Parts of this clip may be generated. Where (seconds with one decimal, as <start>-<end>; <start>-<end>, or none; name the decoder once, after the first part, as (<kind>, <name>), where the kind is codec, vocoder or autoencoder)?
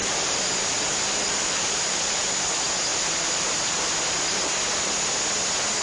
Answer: 0.0-2.4 (vocoder, BigVGAN v2); 2.9-3.9